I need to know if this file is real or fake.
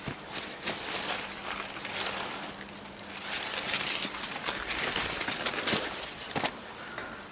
real